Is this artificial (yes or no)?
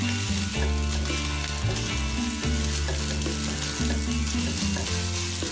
no